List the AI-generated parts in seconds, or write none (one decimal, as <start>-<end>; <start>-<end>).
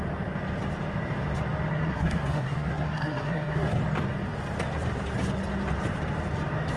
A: 1.7-3.8